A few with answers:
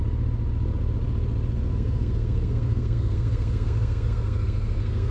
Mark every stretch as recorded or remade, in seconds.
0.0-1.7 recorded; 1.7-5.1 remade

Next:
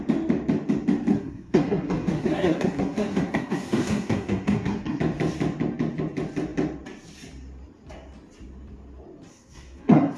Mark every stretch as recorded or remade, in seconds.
0.0-1.1 recorded; 1.1-5.0 remade; 5.0-9.3 recorded; 9.3-10.2 remade

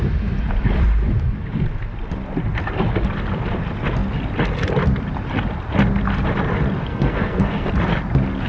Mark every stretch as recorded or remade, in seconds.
0.0-6.8 recorded; 6.8-7.7 remade; 7.7-8.5 recorded

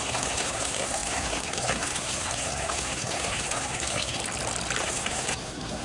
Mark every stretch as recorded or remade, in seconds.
0.0-4.2 remade; 4.2-4.8 recorded; 4.8-5.8 remade

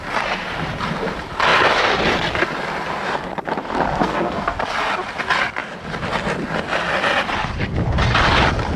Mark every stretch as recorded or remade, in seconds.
0.0-4.0 recorded; 4.0-4.6 remade; 4.6-8.8 recorded

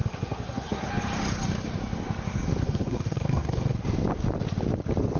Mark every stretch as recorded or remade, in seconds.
0.0-0.9 remade; 0.9-2.6 recorded; 2.6-3.7 remade; 3.7-5.2 recorded

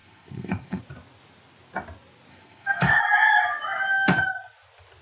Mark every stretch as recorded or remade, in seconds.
0.0-0.8 remade; 0.8-2.3 recorded; 2.3-3.0 remade; 3.0-5.0 recorded